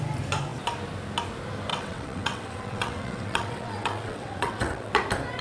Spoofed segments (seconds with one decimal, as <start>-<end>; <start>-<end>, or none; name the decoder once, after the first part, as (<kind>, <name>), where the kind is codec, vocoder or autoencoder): 1.7-4.9 (vocoder, WaveNeXt)